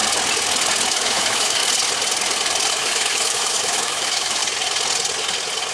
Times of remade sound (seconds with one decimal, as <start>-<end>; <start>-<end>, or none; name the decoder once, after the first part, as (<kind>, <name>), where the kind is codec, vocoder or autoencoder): 0.9-1.6 (autoencoder, DAC-VAE); 2.7-4.4